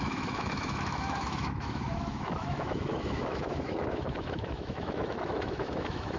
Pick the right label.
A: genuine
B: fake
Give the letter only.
B